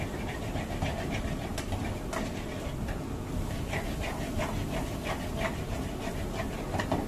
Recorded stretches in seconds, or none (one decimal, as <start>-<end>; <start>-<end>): 0.0-7.1